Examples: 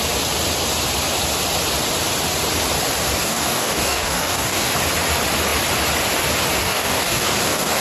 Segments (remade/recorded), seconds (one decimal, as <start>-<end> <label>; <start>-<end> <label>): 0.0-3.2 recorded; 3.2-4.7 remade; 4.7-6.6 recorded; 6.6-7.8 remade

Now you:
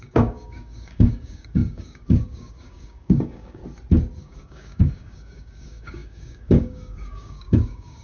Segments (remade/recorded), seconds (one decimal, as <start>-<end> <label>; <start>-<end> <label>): 0.0-3.6 remade; 3.6-4.2 recorded; 4.2-8.0 remade

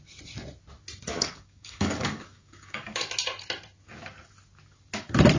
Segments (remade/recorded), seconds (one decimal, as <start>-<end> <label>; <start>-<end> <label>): 0.0-1.1 recorded; 1.1-3.1 remade; 3.1-5.4 recorded